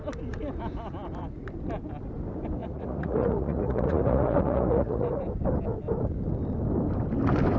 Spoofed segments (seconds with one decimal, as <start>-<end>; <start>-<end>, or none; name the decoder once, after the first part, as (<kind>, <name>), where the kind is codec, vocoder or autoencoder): 2.6-5.2 (vocoder, Vocos)